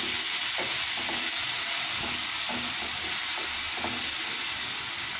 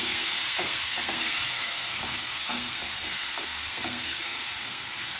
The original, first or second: first